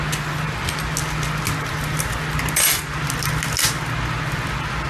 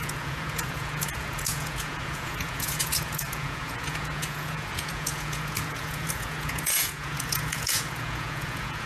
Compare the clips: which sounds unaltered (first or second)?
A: first